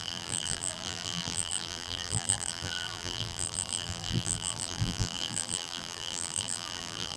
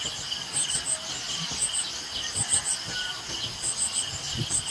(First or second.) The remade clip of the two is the first